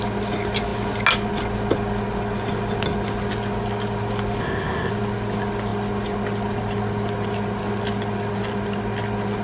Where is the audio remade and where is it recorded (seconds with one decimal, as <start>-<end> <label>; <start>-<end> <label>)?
0.0-4.4 recorded; 4.4-4.9 remade; 4.9-9.4 recorded